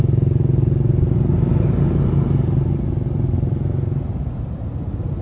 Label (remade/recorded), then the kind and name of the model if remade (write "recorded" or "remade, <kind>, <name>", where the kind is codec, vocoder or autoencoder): recorded